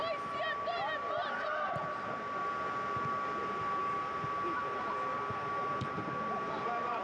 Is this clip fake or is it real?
real